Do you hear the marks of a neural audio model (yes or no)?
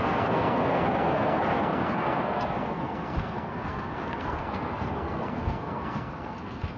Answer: yes